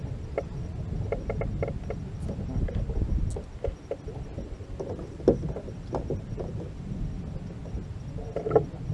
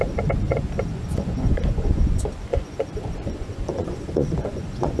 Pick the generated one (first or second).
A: second